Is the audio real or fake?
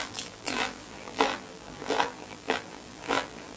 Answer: fake